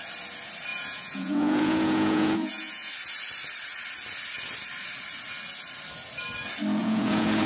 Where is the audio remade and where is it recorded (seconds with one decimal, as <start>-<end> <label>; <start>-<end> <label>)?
0.0-0.7 recorded; 0.7-2.9 remade; 2.9-6.8 recorded; 6.8-7.5 remade